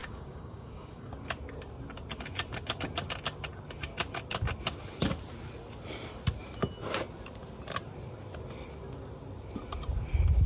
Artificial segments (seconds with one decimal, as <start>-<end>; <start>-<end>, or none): 0.0-1.1